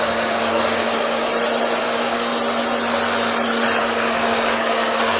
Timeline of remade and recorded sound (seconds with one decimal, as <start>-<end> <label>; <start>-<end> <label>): 0.0-1.3 remade; 1.3-1.8 recorded; 1.8-2.3 remade; 2.3-3.8 recorded; 3.8-5.2 remade